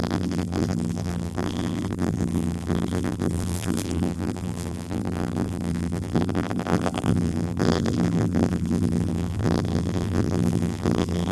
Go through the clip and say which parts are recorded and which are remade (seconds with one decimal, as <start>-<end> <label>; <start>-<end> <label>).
0.0-11.3 remade